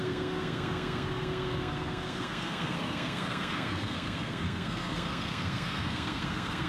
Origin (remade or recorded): remade